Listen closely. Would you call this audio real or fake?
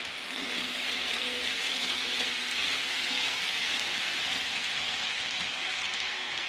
fake